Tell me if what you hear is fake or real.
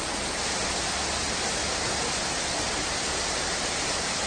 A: real